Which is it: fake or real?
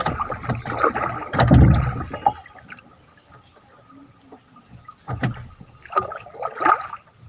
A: real